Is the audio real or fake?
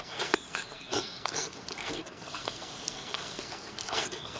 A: fake